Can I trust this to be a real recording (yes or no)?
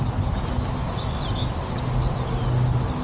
yes